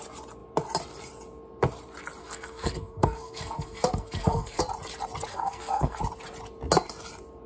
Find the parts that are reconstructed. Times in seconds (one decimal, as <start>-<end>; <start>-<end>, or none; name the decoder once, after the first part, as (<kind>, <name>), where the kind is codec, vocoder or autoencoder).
2.2-4.6 (codec, SNAC); 5.3-6.0